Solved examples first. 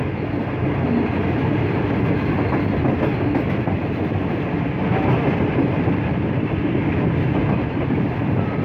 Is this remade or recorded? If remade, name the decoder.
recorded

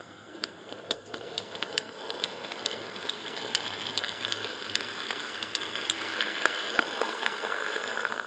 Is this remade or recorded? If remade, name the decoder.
remade, codec, SNAC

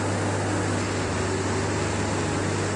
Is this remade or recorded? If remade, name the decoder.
recorded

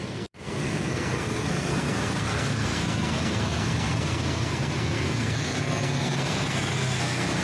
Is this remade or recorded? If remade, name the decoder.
remade, codec, SNAC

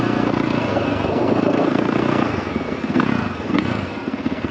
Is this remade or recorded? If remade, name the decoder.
remade, codec, SNAC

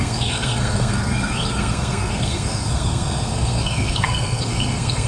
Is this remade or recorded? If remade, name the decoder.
remade, codec, SNAC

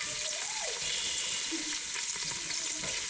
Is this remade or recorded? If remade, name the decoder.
recorded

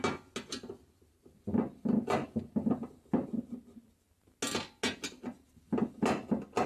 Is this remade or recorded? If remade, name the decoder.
recorded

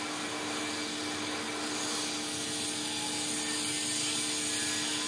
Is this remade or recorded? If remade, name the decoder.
recorded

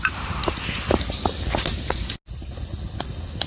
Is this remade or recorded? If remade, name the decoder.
recorded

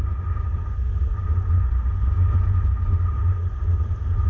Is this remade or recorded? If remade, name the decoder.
recorded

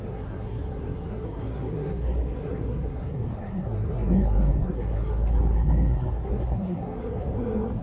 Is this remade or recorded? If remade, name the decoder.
remade, codec, SNAC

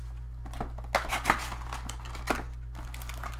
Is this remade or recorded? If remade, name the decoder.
recorded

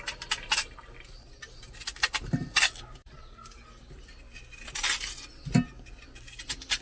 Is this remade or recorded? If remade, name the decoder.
recorded